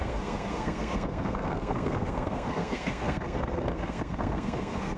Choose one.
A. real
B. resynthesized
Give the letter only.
B